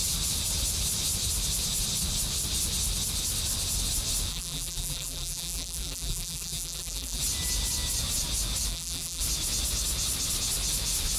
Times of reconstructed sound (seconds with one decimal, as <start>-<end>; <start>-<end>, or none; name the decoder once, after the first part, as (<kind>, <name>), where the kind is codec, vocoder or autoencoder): 4.3-7.2 (vocoder, BigVGAN v2); 8.7-9.2